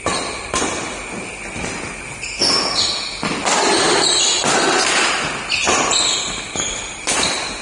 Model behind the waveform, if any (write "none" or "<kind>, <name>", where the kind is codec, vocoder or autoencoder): none